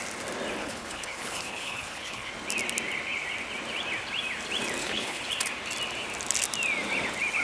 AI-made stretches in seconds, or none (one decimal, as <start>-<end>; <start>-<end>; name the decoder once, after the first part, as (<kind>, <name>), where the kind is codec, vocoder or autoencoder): 0.6-2.3 (codec, HILCodec); 4.8-5.3